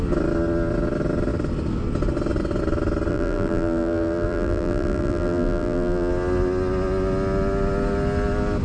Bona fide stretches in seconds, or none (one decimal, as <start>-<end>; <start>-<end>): 0.0-3.1; 6.1-8.6